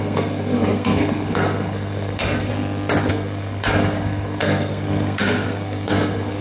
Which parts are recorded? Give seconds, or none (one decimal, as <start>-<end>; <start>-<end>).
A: 2.5-3.1